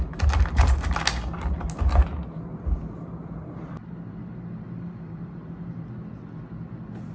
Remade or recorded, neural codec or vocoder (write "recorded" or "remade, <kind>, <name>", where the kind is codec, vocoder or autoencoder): recorded